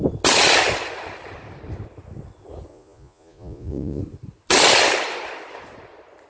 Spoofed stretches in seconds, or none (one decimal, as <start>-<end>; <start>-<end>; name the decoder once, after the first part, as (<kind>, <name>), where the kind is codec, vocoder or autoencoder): 2.7-4.0 (vocoder, Vocos)